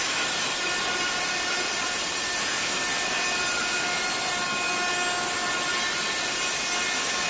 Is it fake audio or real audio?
real